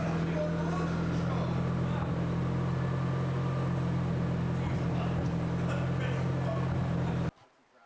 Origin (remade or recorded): recorded